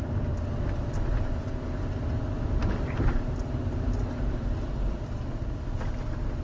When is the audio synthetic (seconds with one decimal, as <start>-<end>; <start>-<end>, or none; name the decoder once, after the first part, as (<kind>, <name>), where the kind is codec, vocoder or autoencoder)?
2.6-5.1 (vocoder, BigVGAN v2)